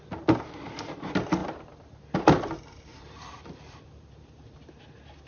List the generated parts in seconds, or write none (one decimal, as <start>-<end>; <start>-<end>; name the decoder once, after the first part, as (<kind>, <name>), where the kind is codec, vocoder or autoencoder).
1.4-4.6 (vocoder, BigVGAN v2)